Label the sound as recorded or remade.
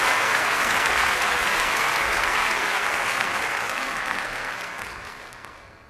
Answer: remade